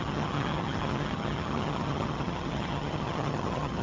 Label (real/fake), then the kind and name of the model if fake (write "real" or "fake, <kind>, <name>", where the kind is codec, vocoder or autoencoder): fake, vocoder, HiFi-GAN